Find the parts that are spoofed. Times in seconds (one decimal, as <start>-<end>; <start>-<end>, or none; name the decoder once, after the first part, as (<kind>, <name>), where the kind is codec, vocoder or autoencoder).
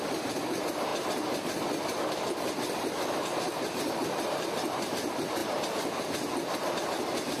none